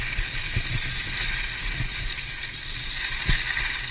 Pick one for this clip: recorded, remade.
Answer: recorded